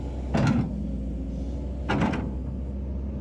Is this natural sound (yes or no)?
yes